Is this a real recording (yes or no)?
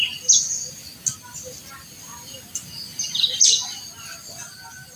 yes